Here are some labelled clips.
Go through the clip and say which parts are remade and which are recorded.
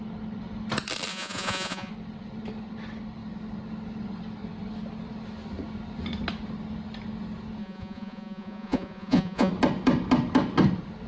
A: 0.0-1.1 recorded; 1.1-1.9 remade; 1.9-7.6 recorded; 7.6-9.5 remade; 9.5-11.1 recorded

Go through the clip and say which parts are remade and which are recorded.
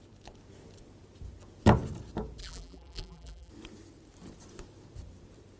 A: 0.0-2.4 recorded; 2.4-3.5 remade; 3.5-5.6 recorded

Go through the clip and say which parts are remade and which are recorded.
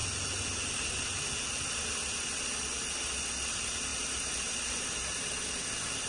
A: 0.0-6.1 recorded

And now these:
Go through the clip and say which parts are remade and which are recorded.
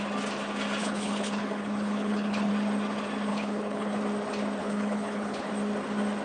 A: 0.0-0.8 recorded; 0.8-2.5 remade; 2.5-3.3 recorded; 3.3-4.0 remade; 4.0-4.6 recorded; 4.6-5.5 remade; 5.5-6.2 recorded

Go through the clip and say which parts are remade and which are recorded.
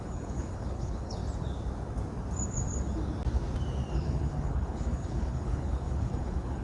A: 0.0-1.2 remade; 1.2-3.9 recorded; 3.9-6.6 remade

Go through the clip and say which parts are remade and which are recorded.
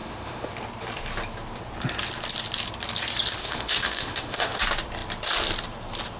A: 0.0-0.5 remade; 0.5-3.4 recorded; 3.4-4.6 remade; 4.6-6.2 recorded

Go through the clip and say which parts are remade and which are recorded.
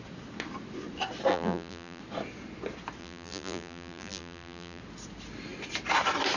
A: 0.0-1.3 recorded; 1.3-2.0 remade; 2.0-3.0 recorded; 3.0-4.8 remade; 4.8-6.4 recorded